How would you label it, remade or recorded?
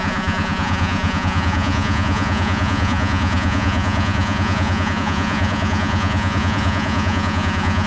remade